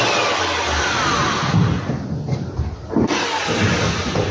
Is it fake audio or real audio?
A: real